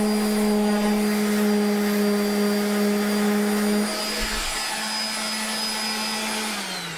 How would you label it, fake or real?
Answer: real